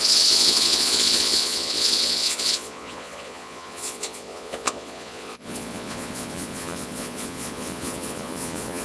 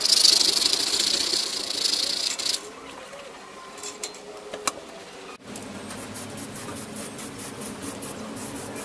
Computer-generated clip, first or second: first